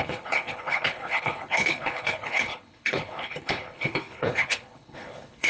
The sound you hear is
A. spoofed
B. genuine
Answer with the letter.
A